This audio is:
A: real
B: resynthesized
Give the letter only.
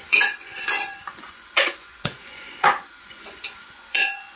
B